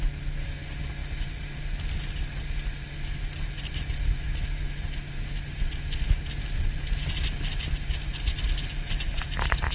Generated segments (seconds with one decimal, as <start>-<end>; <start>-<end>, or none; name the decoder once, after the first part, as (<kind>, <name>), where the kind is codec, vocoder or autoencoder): none